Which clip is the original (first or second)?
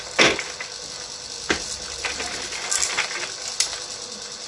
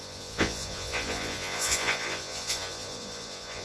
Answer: first